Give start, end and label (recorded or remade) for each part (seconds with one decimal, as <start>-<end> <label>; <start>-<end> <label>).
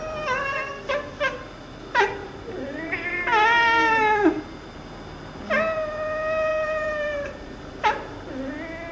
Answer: 0.0-2.2 recorded; 2.2-3.1 remade; 3.1-6.5 recorded; 6.5-7.5 remade; 7.5-8.9 recorded